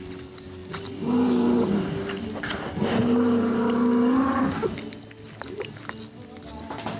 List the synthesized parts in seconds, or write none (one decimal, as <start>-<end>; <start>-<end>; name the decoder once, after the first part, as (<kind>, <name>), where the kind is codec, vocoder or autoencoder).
none